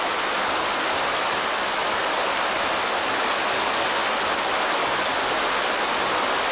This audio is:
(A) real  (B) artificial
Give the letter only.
A